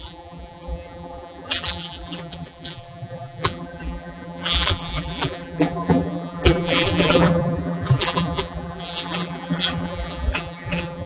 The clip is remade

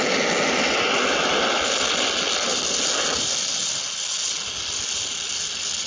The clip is recorded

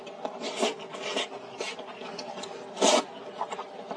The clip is recorded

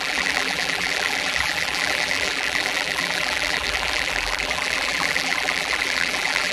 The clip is remade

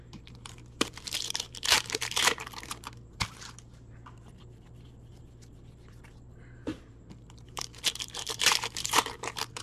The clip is remade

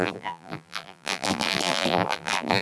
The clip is remade